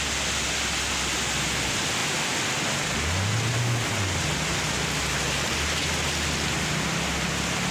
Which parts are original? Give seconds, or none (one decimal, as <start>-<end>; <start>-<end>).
0.0-7.7